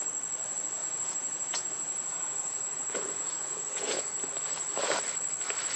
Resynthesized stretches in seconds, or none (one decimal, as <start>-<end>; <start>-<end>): 0.8-4.3

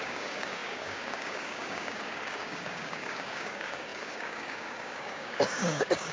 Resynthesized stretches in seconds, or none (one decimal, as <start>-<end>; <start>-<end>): 0.0-6.1

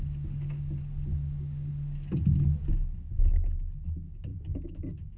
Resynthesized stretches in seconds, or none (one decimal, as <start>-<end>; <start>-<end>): 1.1-1.7; 4.3-5.2

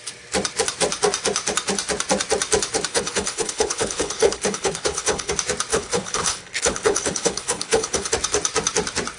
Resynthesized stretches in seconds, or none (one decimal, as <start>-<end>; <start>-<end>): 2.9-5.3; 5.7-8.1